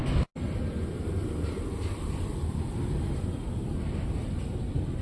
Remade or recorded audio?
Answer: recorded